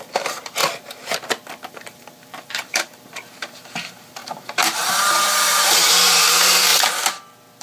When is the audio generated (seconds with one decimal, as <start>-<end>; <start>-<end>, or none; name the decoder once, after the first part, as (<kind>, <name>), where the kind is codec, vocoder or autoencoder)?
0.0-0.6 (vocoder, BigVGAN v2); 1.7-6.7